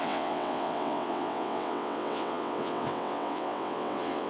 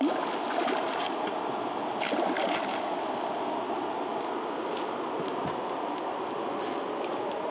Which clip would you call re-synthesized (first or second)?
first